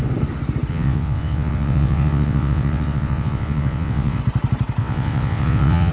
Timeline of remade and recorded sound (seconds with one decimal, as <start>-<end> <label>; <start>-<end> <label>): 0.0-0.7 recorded; 0.7-4.2 remade; 4.2-4.8 recorded; 4.8-5.9 remade